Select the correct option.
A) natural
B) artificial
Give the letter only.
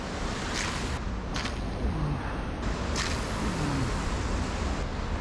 A